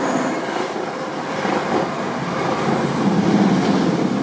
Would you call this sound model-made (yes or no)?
no